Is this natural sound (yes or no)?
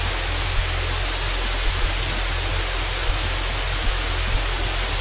yes